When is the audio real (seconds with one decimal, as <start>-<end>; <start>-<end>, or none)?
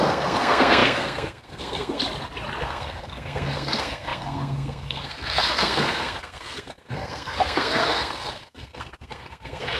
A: 2.0-2.6